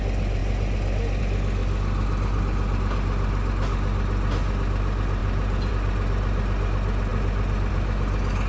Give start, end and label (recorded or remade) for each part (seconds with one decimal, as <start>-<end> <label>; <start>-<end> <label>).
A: 0.0-8.5 recorded